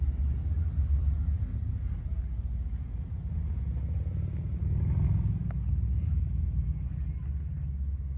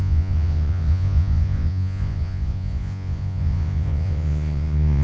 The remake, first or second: second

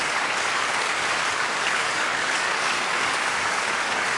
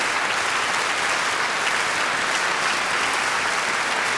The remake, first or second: first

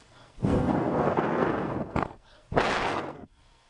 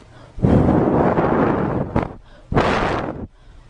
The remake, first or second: first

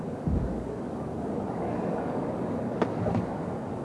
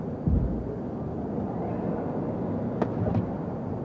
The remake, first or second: first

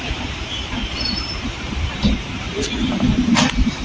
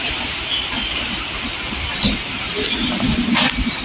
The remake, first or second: first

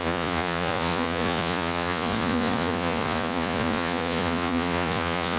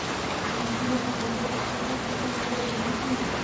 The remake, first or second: first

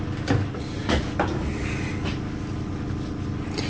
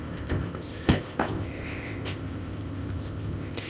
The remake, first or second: second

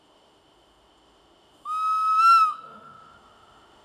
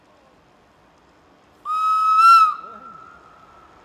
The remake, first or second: first